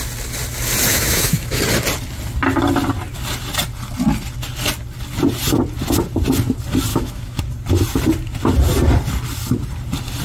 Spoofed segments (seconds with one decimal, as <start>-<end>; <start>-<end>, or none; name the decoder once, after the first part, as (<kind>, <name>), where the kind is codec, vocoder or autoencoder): 0.9-1.6 (autoencoder, DAC-VAE); 6.9-7.4